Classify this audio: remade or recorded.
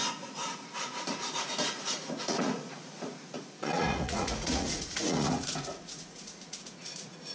remade